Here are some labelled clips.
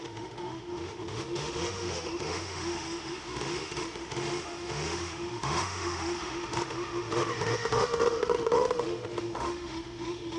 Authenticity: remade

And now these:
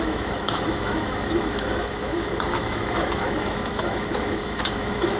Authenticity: remade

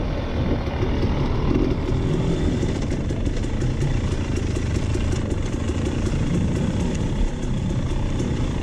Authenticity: recorded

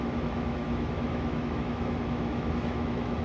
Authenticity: remade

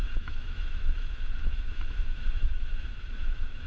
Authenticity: remade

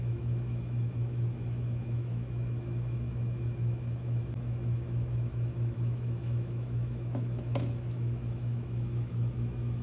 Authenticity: remade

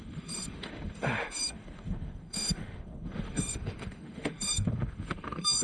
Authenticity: remade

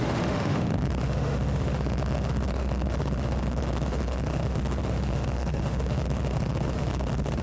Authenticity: remade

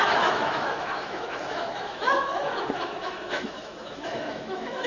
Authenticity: remade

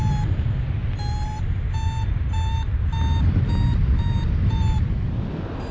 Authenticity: recorded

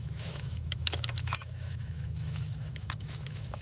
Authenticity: remade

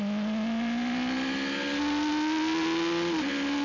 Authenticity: recorded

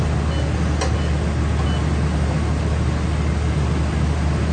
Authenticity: recorded